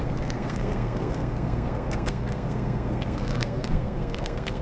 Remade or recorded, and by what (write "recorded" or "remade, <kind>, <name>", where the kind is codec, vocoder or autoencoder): remade, codec, SNAC